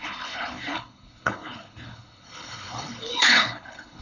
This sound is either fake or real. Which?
fake